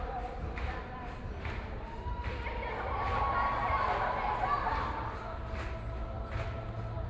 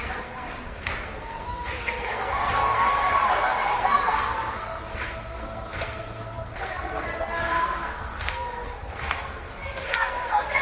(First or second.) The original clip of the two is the first